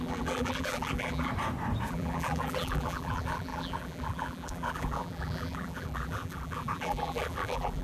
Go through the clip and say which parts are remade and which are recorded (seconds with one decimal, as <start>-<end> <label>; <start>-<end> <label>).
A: 0.0-1.3 remade; 1.3-1.9 recorded; 1.9-7.8 remade